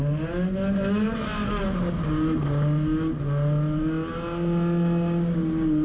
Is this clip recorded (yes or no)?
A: yes